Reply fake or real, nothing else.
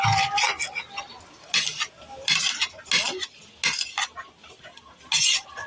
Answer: real